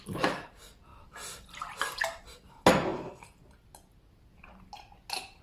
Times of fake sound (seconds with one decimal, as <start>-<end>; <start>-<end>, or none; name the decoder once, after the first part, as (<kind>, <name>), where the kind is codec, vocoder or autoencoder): none